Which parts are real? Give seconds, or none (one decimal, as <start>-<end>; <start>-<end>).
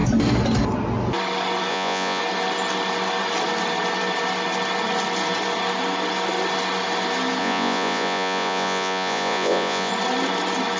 0.0-1.7; 2.2-7.4; 9.9-10.8